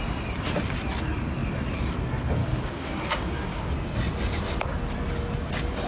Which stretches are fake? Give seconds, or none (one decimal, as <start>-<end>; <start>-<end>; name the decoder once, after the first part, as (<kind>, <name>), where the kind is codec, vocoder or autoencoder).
2.4-3.7 (codec, DAC)